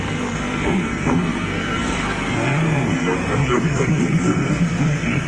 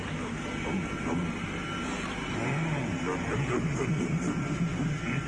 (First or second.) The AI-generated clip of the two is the first